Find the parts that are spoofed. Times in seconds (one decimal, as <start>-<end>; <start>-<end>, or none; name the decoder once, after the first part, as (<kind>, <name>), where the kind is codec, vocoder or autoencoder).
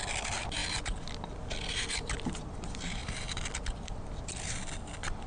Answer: none